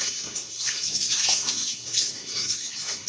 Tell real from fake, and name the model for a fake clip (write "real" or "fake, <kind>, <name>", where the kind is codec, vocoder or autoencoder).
fake, codec, SNAC